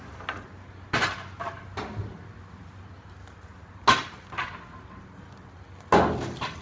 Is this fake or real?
real